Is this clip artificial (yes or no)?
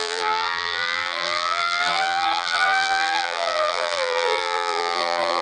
yes